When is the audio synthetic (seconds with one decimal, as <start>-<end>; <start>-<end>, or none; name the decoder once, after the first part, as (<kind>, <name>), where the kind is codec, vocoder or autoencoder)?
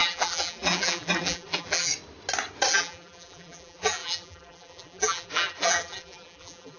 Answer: 0.0-1.9 (vocoder, BigVGAN v2); 2.7-6.8